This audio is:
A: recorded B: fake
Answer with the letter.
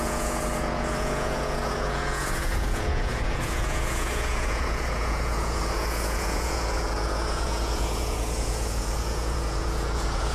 B